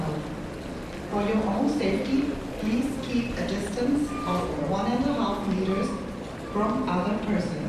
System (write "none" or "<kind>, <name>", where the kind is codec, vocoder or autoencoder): none